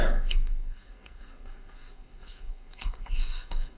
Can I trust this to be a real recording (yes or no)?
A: no